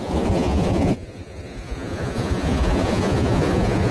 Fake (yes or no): yes